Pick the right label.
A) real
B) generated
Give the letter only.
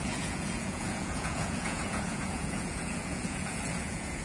B